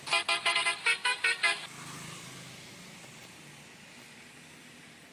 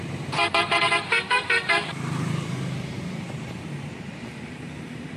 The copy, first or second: second